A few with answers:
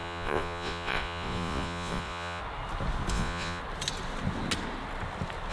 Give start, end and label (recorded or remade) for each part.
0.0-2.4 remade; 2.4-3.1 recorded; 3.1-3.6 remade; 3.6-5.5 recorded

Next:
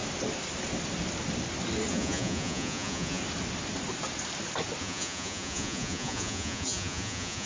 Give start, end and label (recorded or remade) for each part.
0.0-1.9 recorded; 1.9-3.2 remade; 3.2-4.8 recorded; 4.8-7.5 remade

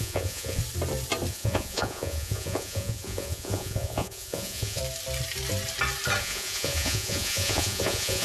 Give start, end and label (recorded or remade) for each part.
0.0-0.6 remade; 0.6-1.3 recorded; 1.3-4.8 remade; 4.8-6.2 recorded; 6.2-8.2 remade

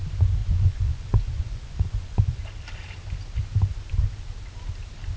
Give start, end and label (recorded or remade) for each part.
0.0-0.4 recorded; 0.4-2.4 remade; 2.4-5.2 recorded

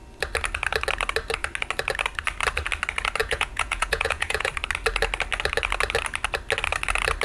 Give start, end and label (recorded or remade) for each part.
0.0-3.2 recorded; 3.2-4.5 remade; 4.5-7.2 recorded

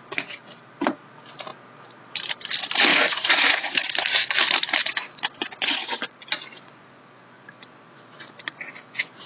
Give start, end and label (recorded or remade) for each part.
0.0-2.9 recorded; 2.9-4.1 remade; 4.1-4.8 recorded; 4.8-9.3 remade

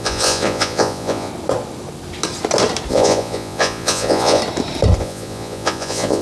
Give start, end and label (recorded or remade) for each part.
0.0-1.3 remade; 1.3-2.9 recorded; 2.9-4.4 remade; 4.4-5.0 recorded; 5.0-6.2 remade